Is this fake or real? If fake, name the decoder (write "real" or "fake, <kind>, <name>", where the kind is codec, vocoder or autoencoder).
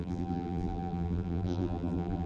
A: fake, vocoder, BigVGAN v2